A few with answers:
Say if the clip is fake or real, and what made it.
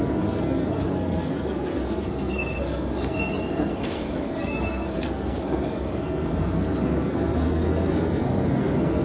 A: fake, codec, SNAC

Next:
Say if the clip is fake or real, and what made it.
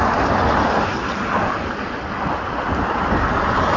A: real